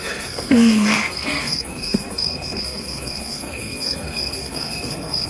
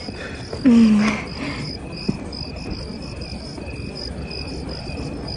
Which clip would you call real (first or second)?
second